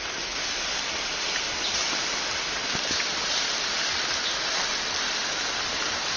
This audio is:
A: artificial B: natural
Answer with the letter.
B